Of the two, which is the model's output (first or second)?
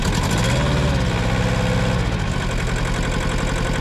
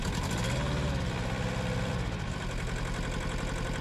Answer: second